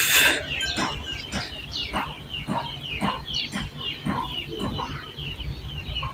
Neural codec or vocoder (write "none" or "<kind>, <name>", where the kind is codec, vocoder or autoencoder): none